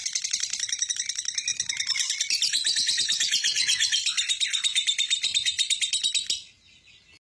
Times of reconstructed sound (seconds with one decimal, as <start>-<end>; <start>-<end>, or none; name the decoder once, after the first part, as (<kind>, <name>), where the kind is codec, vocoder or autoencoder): 1.5-5.9 (vocoder, BigVGAN v2)